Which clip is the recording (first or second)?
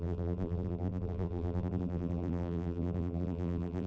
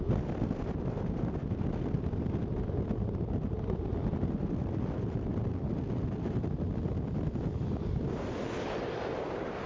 second